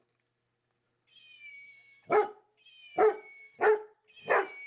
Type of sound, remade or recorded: recorded